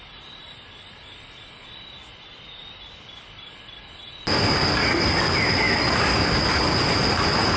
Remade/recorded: recorded